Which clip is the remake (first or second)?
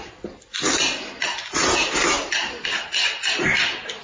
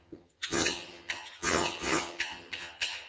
second